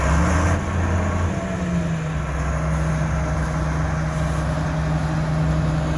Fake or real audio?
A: real